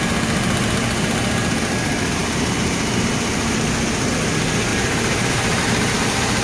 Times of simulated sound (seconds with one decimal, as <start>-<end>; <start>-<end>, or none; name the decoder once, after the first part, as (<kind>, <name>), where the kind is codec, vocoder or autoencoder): 2.2-4.1 (vocoder, BigVGAN v2); 4.7-5.6